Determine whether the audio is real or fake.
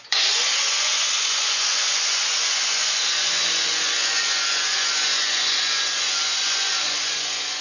fake